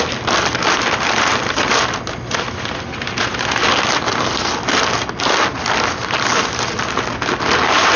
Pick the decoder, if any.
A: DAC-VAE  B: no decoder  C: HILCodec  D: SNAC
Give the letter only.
B